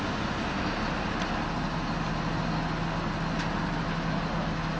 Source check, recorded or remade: recorded